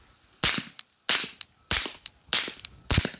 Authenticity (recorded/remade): recorded